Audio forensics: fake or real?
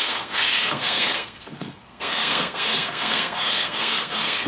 fake